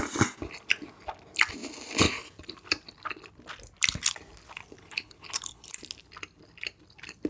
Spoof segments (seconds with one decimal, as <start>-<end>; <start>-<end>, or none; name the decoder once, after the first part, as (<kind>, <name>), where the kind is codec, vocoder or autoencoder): 4.8-5.7 (codec, HILCodec)